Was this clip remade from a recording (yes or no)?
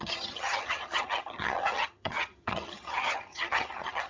yes